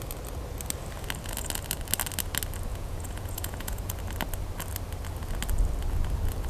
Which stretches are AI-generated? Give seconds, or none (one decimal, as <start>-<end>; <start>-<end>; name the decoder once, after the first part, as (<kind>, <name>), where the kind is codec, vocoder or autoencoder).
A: 2.7-3.9 (vocoder, Vocos)